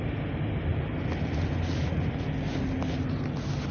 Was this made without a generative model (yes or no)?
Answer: yes